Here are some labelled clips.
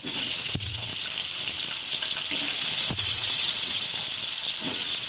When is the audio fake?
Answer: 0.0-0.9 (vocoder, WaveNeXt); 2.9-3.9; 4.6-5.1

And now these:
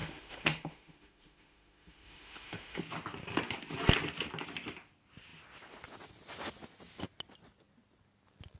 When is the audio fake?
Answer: 0.0-2.8 (autoencoder, DAC-VAE)

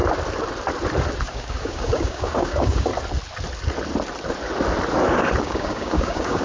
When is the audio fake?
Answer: 1.2-2.9 (codec, DAC); 5.4-6.4

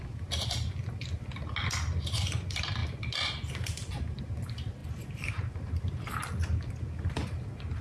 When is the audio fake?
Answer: none

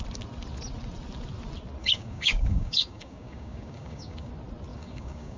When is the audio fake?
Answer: 1.8-4.3 (codec, DAC); 4.7-5.4

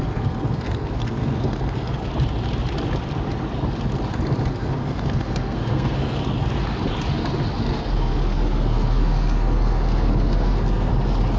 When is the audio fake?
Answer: 0.0-2.1 (codec, SNAC); 4.5-6.2; 7.6-10.9